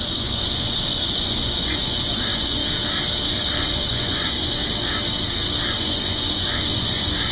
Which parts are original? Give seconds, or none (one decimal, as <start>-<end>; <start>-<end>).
2.6-3.3; 4.6-5.7